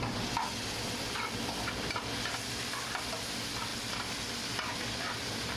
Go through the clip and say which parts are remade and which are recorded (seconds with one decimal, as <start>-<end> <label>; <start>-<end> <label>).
0.0-5.6 recorded